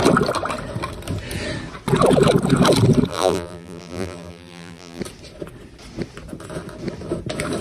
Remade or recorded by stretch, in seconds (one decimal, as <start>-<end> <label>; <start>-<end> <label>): 0.0-3.1 recorded; 3.1-5.0 remade; 5.0-7.6 recorded